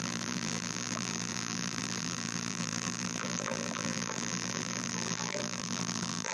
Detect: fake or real fake